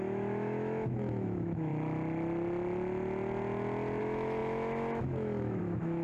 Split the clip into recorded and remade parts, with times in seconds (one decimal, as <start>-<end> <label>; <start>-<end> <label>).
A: 0.0-1.7 remade; 1.7-4.0 recorded; 4.0-6.0 remade